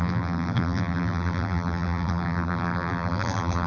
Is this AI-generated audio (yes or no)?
yes